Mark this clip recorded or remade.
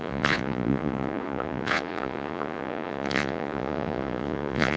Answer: remade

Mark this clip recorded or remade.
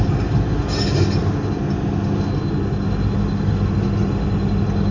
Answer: recorded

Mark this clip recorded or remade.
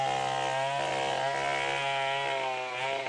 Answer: recorded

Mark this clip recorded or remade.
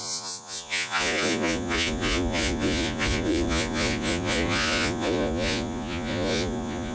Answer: remade